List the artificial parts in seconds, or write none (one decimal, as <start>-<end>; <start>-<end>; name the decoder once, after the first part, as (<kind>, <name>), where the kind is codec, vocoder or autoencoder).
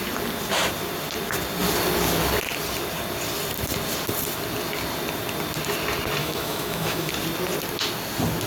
6.2-7.1 (autoencoder, DAC-VAE)